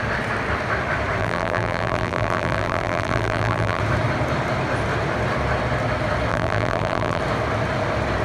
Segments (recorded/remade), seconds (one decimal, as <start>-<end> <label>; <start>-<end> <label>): 0.0-1.2 recorded; 1.2-3.8 remade; 3.8-6.3 recorded; 6.3-7.2 remade; 7.2-8.2 recorded